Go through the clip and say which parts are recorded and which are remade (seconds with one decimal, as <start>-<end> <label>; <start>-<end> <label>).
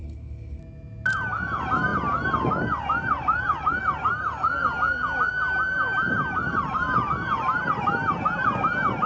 0.0-0.6 remade; 0.6-9.1 recorded